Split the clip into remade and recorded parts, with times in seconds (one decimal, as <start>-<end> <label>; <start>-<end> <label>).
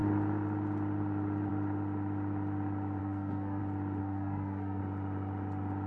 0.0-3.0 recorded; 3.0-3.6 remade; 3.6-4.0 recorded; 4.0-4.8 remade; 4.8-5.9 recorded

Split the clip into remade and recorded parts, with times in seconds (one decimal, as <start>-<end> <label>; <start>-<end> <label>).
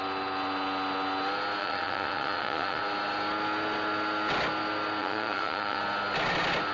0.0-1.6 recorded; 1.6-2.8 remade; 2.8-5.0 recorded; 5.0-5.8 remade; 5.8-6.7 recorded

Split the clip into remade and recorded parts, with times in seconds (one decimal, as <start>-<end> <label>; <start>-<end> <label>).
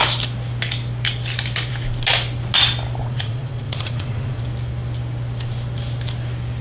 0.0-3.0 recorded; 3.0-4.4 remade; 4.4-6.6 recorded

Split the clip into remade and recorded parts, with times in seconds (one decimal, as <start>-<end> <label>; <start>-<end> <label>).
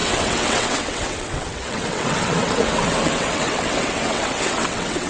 0.0-5.1 remade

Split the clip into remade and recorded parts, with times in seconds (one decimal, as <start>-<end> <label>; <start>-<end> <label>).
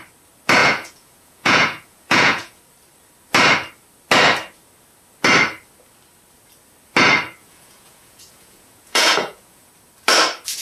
0.0-0.6 recorded; 0.6-2.6 remade; 2.6-7.4 recorded; 7.4-9.7 remade; 9.7-10.6 recorded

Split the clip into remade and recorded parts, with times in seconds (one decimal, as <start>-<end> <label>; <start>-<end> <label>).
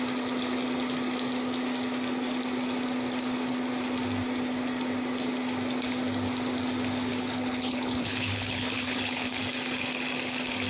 0.0-7.1 recorded; 7.1-9.4 remade; 9.4-10.7 recorded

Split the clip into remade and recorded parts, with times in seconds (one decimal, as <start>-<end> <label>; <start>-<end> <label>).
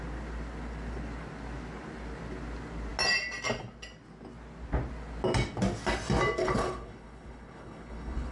0.0-6.4 recorded; 6.4-8.3 remade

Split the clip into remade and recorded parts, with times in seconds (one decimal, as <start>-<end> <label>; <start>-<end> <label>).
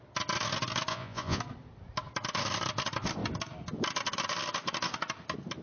0.0-0.9 recorded; 0.9-1.4 remade; 1.4-5.6 recorded